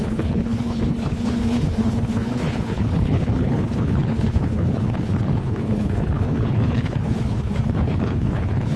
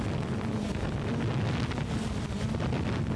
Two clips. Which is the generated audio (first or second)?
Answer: first